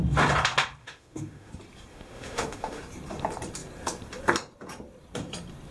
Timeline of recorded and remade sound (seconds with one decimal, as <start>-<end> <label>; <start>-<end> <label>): 0.0-0.8 recorded; 0.8-1.5 remade; 1.5-1.9 recorded; 1.9-2.8 remade; 2.8-5.7 recorded